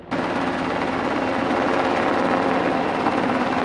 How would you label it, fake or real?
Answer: real